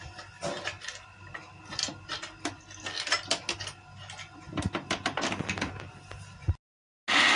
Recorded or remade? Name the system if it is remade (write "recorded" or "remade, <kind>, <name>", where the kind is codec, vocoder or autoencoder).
recorded